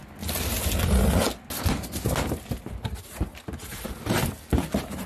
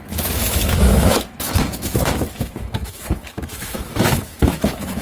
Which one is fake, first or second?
second